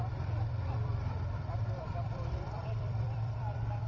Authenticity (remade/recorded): remade